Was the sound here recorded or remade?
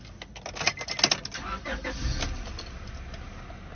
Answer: recorded